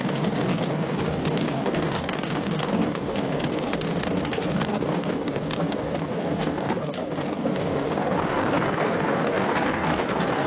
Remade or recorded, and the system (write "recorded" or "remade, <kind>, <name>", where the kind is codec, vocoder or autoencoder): remade, codec, DAC